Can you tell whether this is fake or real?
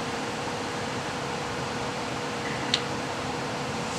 fake